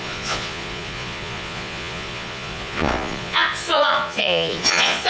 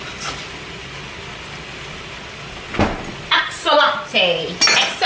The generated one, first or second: first